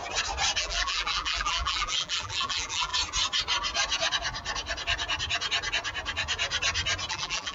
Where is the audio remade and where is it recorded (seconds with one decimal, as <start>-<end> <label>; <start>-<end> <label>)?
0.0-0.6 recorded; 0.6-2.9 remade; 2.9-7.1 recorded; 7.1-7.5 remade